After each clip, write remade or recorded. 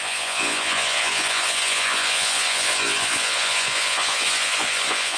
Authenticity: remade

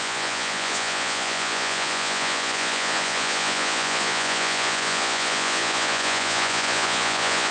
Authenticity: remade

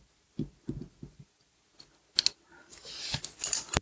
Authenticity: recorded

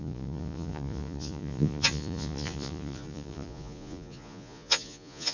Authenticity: remade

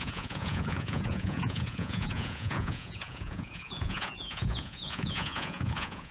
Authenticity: remade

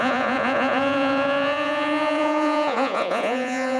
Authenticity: remade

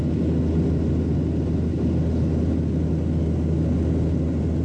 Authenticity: recorded